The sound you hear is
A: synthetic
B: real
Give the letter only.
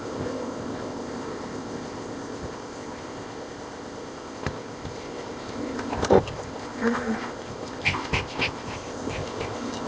A